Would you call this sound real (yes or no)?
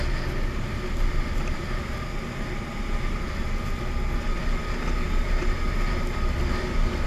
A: yes